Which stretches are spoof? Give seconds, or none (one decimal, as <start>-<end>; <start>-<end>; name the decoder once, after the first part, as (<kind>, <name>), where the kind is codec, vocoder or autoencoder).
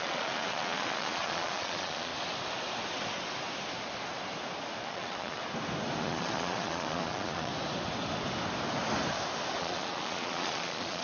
0.0-2.1 (vocoder, Vocos); 4.8-5.4; 6.0-7.5; 9.6-11.0